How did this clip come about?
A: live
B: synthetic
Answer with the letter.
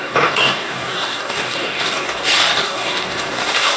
B